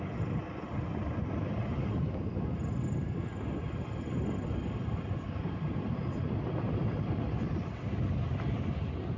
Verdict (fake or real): real